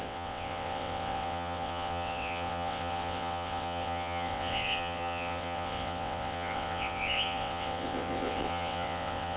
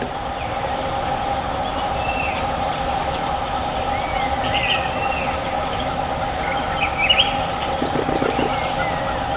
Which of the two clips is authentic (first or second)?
second